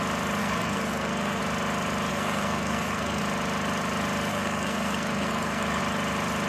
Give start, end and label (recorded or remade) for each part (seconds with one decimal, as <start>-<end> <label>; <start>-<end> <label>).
0.0-0.4 recorded; 0.4-1.4 remade; 1.4-2.1 recorded; 2.1-3.2 remade; 3.2-4.3 recorded; 4.3-5.8 remade; 5.8-6.5 recorded